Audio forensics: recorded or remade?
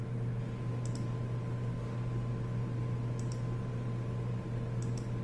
recorded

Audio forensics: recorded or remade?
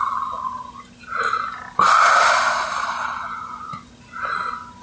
recorded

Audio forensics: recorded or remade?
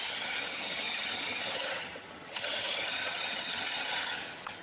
remade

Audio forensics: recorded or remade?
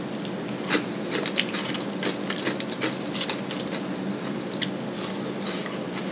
recorded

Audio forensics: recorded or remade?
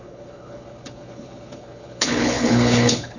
remade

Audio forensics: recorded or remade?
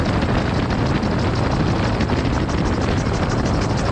recorded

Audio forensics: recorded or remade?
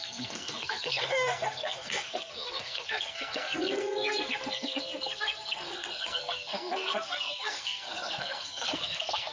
remade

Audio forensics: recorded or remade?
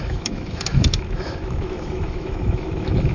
remade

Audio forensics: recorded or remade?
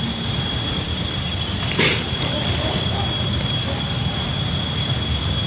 recorded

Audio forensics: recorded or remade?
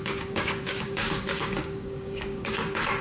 remade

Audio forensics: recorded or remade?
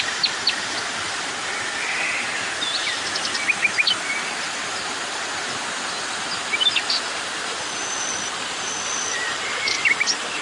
recorded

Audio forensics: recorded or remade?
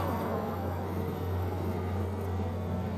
remade